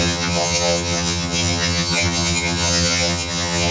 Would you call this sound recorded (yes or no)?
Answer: no